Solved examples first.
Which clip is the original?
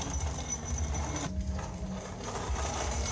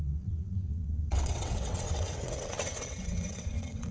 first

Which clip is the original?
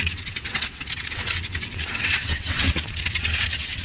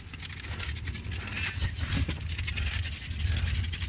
second